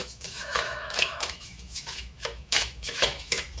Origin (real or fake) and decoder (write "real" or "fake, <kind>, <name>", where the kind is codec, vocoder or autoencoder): fake, autoencoder, DAC-VAE